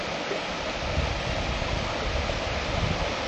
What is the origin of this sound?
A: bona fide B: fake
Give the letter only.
A